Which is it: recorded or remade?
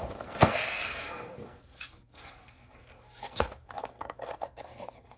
remade